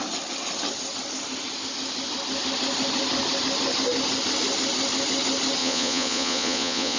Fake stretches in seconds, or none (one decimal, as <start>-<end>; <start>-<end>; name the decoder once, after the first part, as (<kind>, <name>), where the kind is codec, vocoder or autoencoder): 5.6-7.0 (vocoder, Vocos)